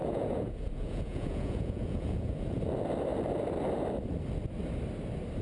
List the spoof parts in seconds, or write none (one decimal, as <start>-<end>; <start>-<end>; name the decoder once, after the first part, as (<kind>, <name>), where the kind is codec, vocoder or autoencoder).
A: 0.0-2.6 (vocoder, Vocos)